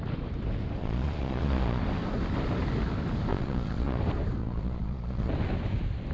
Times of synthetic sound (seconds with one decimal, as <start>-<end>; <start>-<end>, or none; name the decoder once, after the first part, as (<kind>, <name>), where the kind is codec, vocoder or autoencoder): 0.8-1.8 (vocoder, Vocos); 3.3-4.0; 4.4-5.3